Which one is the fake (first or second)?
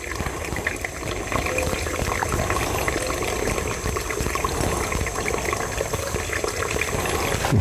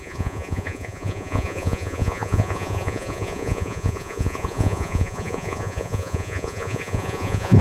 second